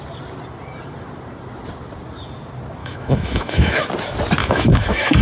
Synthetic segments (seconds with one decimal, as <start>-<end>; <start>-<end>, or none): 2.8-3.8; 4.4-5.2